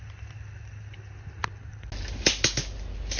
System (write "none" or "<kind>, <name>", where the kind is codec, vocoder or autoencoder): none